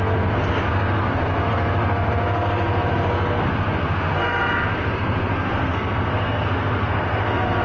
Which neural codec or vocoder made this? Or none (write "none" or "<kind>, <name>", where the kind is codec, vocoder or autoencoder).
codec, SNAC